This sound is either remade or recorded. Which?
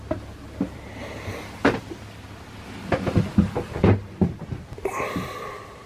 recorded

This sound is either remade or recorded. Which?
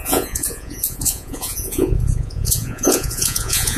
remade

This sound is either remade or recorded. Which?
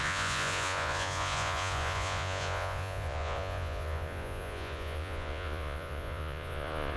remade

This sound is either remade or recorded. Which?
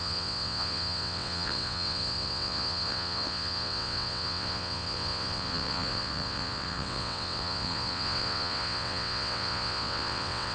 remade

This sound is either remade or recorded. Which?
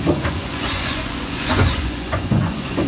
remade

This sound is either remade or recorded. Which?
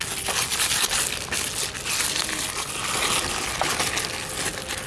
recorded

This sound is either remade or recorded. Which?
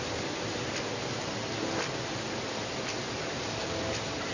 recorded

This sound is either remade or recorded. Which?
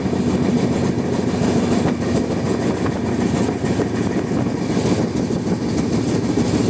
recorded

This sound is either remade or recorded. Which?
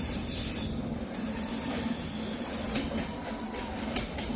recorded